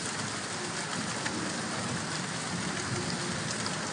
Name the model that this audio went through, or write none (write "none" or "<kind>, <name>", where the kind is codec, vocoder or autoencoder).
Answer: none